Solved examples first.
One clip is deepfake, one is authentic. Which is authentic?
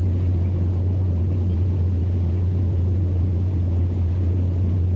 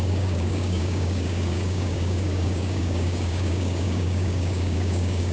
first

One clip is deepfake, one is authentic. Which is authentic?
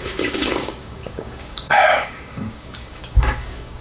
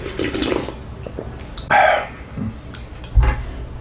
second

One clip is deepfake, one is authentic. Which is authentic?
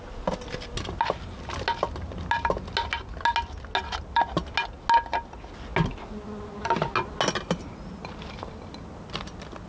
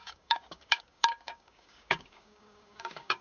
first